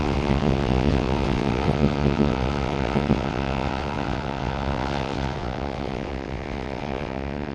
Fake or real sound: fake